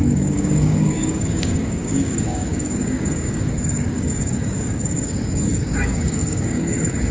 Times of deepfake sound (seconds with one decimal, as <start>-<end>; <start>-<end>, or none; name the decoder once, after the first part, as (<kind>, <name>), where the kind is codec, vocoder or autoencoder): 0.0-7.1 (codec, DAC)